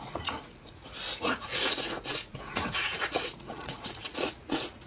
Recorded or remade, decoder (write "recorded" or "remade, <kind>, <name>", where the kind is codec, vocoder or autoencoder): remade, vocoder, Vocos